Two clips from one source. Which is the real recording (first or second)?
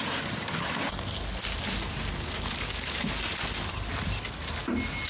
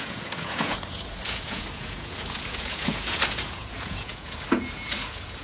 first